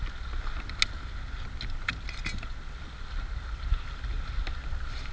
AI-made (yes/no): no